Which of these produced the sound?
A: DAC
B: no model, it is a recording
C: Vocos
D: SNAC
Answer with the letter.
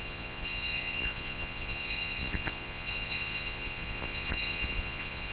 C